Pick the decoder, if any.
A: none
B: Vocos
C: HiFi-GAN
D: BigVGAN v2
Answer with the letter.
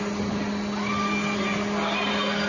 A